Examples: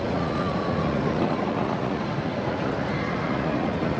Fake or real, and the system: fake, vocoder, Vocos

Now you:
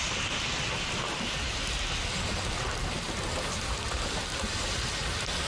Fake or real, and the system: real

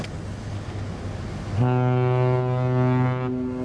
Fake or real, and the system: real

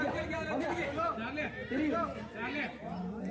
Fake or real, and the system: real